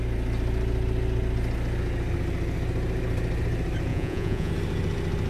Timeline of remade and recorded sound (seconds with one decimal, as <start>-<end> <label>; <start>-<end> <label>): 0.0-3.9 recorded; 3.9-4.5 remade; 4.5-5.3 recorded